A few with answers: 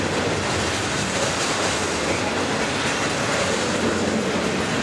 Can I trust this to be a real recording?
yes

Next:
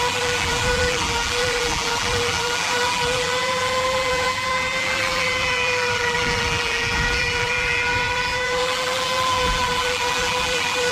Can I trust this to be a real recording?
no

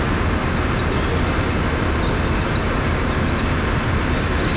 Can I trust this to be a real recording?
yes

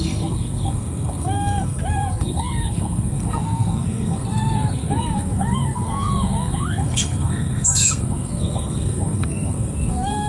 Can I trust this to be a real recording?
no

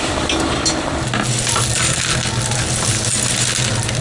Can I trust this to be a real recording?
yes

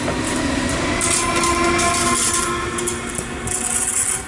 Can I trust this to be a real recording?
yes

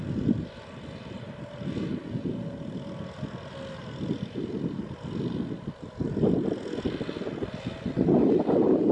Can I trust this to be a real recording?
yes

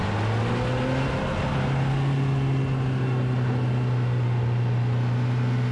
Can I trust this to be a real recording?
yes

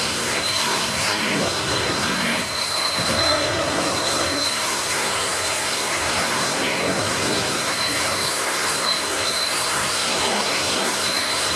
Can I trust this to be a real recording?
no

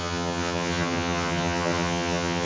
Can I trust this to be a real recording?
no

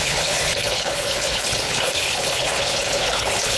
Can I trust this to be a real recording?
no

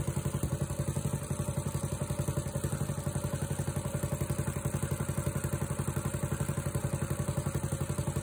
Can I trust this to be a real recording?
yes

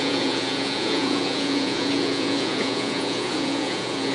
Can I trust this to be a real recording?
no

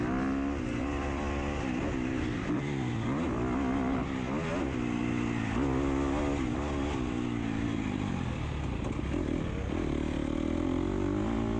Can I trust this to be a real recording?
yes